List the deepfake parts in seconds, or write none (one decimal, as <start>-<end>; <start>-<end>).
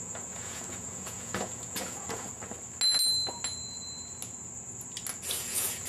0.0-2.3; 5.4-5.9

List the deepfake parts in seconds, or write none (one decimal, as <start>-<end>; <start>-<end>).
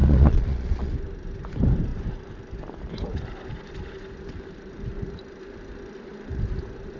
0.0-0.9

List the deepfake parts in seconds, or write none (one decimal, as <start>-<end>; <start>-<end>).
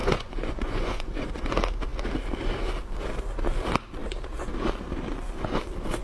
0.0-1.5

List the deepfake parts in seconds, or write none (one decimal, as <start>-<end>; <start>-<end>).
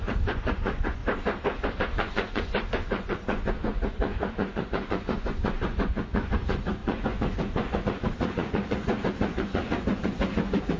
0.0-1.0; 1.8-10.8